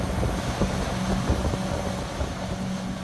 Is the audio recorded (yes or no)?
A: yes